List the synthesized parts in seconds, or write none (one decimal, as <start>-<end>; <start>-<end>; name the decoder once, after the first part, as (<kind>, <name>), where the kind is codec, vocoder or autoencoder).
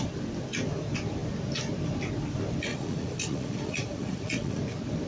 2.7-4.6 (vocoder, Vocos)